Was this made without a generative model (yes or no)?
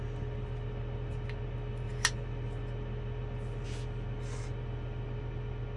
yes